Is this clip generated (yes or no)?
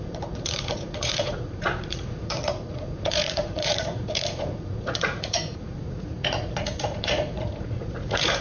yes